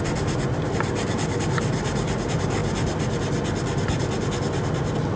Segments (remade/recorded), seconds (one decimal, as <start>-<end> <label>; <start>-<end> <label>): 0.0-5.2 recorded